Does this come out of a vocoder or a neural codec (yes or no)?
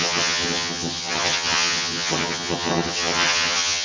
yes